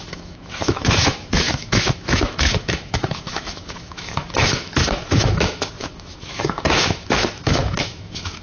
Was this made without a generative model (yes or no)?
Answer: no